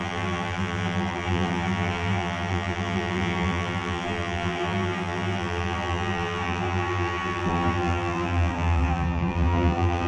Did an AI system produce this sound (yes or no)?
yes